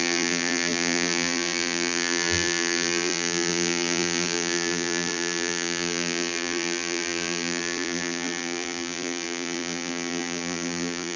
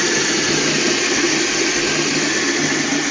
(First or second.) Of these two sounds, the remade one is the first